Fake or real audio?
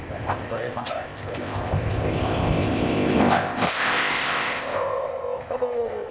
fake